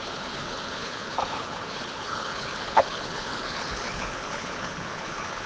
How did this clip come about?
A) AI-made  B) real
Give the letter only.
A